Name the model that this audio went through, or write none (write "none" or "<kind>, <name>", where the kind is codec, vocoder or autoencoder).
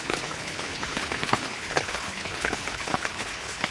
codec, HILCodec